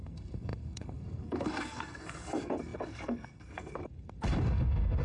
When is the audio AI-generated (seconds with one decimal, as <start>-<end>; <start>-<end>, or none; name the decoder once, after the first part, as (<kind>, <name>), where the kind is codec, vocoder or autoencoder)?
0.0-3.8 (codec, SNAC); 4.4-5.0